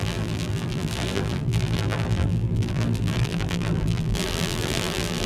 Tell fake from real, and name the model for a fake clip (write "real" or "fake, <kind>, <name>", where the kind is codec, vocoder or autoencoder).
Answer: fake, vocoder, BigVGAN v2